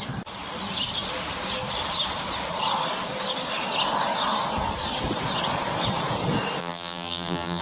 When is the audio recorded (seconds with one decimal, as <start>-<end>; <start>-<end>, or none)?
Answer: 0.0-6.6